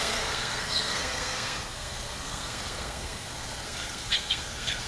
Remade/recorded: remade